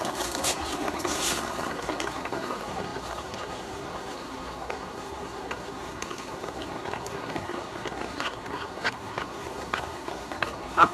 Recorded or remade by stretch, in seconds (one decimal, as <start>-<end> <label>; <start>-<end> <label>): 0.0-10.9 remade